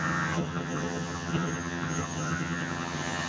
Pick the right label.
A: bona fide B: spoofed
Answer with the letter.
B